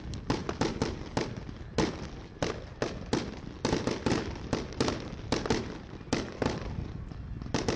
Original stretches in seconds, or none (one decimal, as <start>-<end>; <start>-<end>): 0.0-7.8